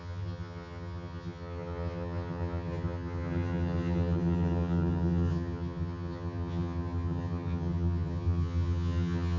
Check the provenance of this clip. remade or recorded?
remade